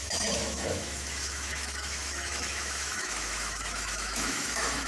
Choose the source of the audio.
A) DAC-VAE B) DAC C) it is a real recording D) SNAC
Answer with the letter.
A